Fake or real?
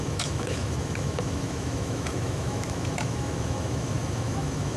fake